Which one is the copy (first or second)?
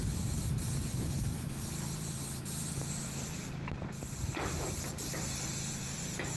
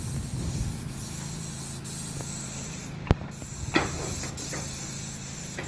first